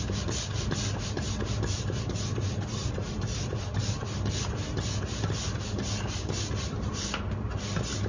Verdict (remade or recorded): recorded